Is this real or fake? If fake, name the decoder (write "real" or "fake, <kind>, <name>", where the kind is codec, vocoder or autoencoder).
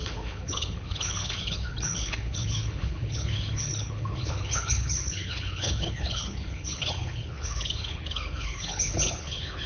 fake, codec, HILCodec